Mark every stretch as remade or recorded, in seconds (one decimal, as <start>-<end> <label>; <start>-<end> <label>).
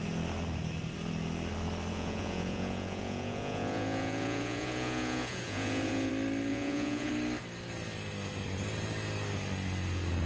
0.0-1.9 recorded; 1.9-6.1 remade; 6.1-6.5 recorded; 6.5-7.1 remade; 7.1-10.3 recorded